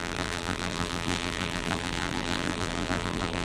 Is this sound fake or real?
fake